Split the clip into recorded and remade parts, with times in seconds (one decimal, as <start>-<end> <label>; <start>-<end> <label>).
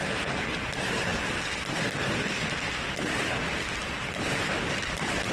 0.0-1.1 remade; 1.1-4.1 recorded; 4.1-5.3 remade